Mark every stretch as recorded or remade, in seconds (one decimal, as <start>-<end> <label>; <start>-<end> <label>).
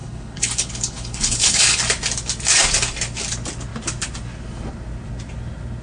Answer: 0.0-1.8 remade; 1.8-5.8 recorded